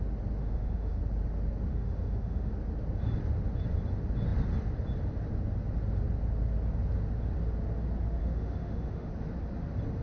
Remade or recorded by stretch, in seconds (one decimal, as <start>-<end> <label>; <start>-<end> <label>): 0.0-0.4 recorded; 0.4-1.0 remade; 1.0-1.7 recorded; 1.7-2.5 remade; 2.5-8.2 recorded; 8.2-9.1 remade; 9.1-10.0 recorded